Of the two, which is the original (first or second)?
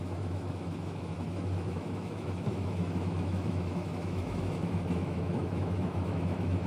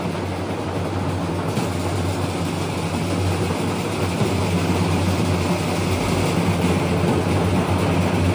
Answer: second